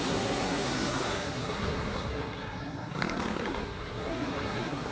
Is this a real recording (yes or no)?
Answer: no